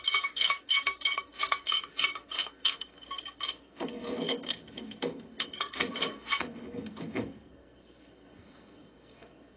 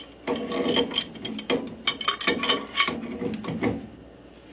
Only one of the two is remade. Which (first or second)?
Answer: first